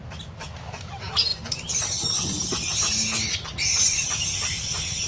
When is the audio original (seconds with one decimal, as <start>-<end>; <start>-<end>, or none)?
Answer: 0.0-5.1